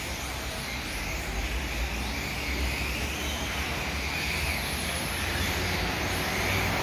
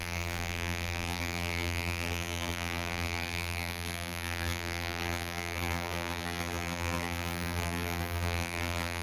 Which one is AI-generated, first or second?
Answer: second